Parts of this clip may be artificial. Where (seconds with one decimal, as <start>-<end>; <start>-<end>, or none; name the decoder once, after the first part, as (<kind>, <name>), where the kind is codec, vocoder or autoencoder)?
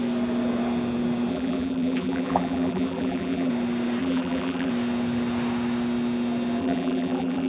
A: 1.3-3.5 (vocoder, BigVGAN v2); 4.0-4.7; 6.6-7.5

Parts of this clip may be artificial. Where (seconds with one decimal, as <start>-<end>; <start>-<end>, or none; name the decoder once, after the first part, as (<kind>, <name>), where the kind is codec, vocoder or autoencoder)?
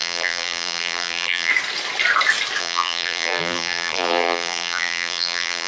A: 0.0-1.5 (vocoder, BigVGAN v2); 2.6-5.7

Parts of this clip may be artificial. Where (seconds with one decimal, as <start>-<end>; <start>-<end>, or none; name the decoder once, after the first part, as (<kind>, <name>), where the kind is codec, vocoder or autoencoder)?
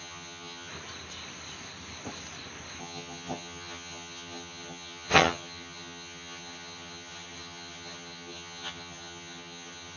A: 0.0-0.7 (vocoder, HiFi-GAN); 2.8-10.0